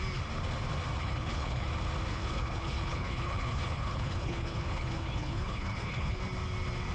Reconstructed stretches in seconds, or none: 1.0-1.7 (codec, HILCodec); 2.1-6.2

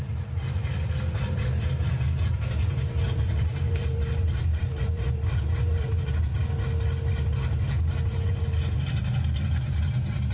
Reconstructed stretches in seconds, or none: 0.0-0.6 (vocoder, BigVGAN v2); 1.3-6.3; 8.1-10.3

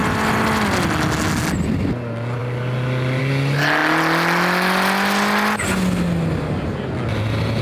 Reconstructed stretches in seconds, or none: none